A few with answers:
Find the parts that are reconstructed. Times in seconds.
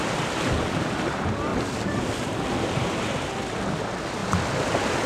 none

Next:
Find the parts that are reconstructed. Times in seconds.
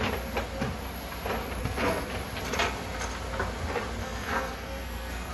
1.6-2.1; 4.0-5.3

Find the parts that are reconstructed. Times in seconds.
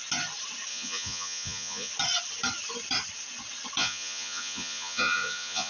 0.7-1.9; 3.8-5.7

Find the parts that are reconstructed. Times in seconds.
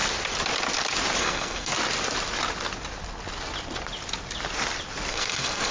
1.2-1.7; 5.1-5.7